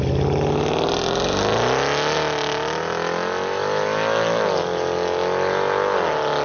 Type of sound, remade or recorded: recorded